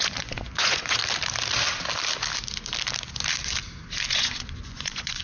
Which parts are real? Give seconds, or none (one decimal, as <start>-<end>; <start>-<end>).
1.0-4.1